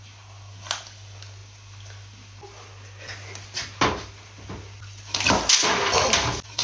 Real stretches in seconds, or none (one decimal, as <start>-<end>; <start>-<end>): 0.0-6.6